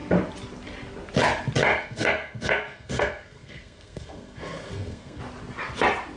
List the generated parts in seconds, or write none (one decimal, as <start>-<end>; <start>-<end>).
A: 1.8-5.2

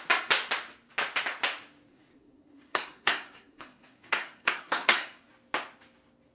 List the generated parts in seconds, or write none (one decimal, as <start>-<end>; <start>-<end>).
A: 1.9-5.3

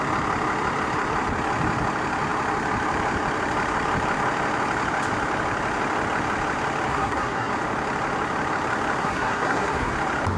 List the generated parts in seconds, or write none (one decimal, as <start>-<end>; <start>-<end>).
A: 6.9-7.5; 9.0-9.9

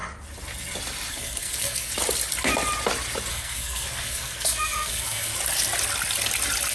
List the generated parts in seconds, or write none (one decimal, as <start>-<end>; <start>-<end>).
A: 1.1-1.9; 3.3-5.3

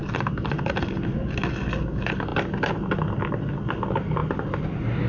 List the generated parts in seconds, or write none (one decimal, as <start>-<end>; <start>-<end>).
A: none

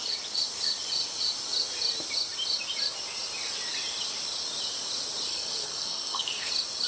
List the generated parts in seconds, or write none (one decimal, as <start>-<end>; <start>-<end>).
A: 5.3-6.5

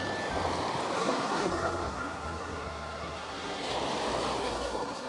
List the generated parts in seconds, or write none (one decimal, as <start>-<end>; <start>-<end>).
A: 1.0-3.7; 4.4-5.1

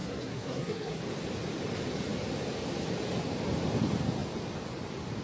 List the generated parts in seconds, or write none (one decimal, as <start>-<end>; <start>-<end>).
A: 0.0-1.0